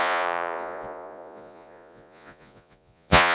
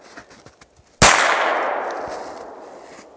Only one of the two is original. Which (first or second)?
second